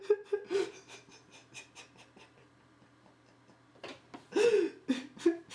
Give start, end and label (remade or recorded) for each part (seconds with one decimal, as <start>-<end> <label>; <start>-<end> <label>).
0.0-5.5 recorded